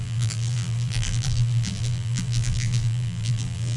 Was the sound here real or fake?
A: fake